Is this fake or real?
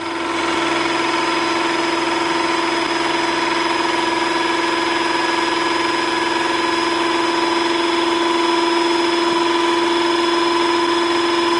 real